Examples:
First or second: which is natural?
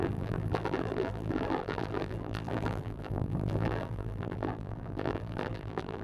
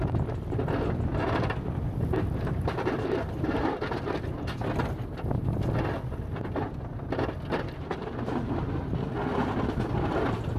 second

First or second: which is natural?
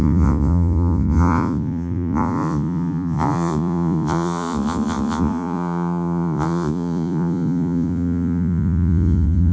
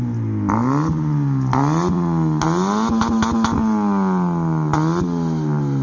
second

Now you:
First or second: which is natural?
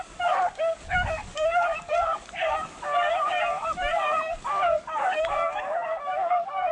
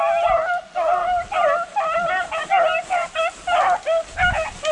second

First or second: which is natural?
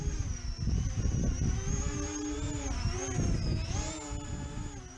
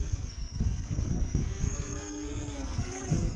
first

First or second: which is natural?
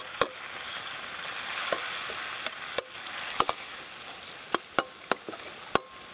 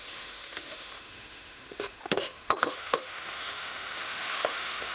first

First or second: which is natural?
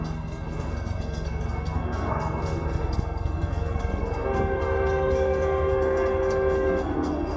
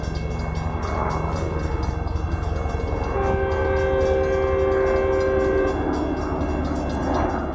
second